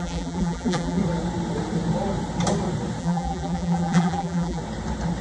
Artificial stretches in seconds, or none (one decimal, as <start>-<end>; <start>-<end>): 0.0-1.0; 3.0-4.6